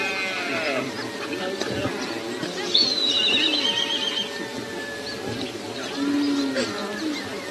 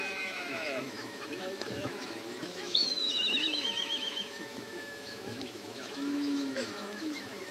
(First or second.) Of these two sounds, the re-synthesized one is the second